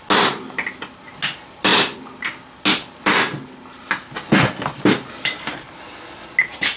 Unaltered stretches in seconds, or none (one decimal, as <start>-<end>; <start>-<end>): 0.0-6.8